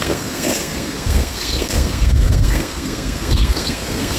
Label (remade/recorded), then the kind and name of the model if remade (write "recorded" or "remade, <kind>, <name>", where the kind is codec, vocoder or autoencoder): remade, codec, SNAC